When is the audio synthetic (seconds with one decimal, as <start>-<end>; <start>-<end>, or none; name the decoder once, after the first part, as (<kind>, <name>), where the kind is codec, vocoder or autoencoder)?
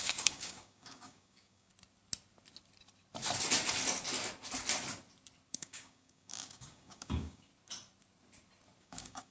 0.0-1.7 (codec, DAC); 5.5-7.5; 8.8-9.3